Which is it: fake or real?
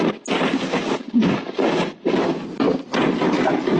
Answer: real